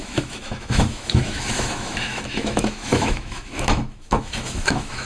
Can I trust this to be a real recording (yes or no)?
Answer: no